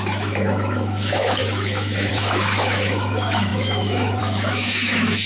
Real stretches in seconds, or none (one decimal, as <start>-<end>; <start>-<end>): none